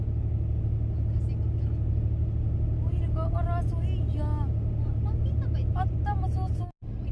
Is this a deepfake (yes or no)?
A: no